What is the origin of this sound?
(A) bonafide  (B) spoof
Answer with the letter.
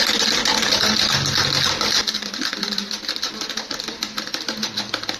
A